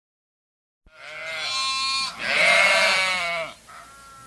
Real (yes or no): yes